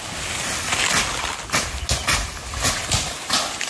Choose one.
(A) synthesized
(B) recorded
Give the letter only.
B